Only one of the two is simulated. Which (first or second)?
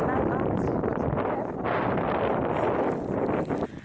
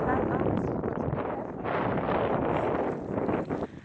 second